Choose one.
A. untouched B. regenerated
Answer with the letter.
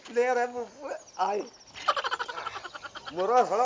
A